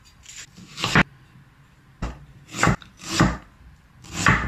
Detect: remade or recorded recorded